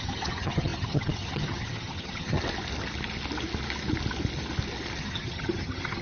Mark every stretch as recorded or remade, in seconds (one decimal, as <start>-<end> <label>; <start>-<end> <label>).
0.0-2.4 remade; 2.4-5.0 recorded; 5.0-6.0 remade